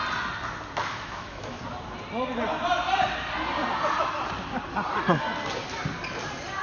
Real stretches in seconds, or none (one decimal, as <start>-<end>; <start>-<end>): 0.0-0.8; 1.6-6.6